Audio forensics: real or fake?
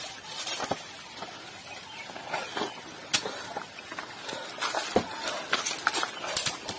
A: real